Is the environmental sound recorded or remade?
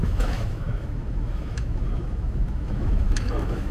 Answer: remade